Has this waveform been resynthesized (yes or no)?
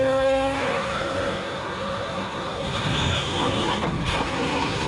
yes